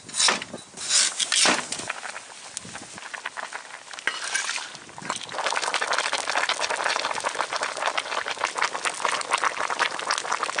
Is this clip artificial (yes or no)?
no